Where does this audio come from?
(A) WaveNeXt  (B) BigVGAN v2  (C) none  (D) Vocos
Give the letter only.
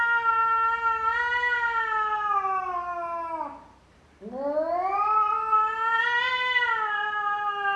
C